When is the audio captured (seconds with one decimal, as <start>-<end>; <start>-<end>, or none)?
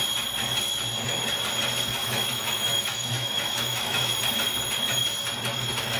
0.0-2.0; 4.1-6.0